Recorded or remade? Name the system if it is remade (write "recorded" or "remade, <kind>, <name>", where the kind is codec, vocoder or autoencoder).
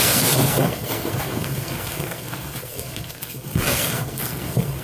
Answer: remade, codec, SNAC